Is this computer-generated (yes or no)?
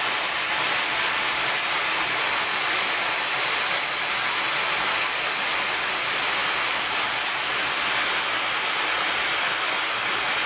no